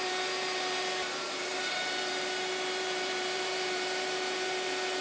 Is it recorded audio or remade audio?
remade